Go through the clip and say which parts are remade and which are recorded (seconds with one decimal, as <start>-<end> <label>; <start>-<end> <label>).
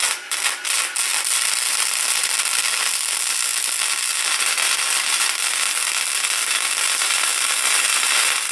0.0-1.1 recorded; 1.1-2.6 remade; 2.6-8.5 recorded